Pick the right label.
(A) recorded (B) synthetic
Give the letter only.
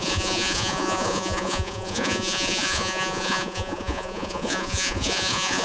B